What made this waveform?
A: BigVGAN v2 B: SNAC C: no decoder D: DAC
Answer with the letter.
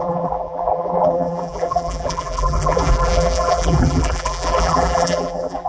A